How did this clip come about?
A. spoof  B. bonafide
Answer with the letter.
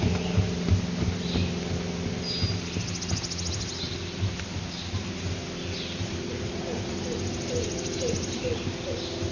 B